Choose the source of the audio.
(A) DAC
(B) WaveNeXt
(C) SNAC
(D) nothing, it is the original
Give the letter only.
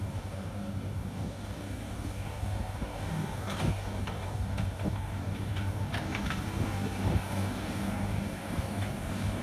A